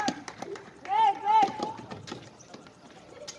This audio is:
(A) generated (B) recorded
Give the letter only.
B